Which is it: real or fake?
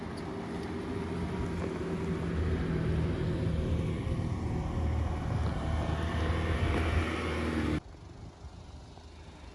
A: real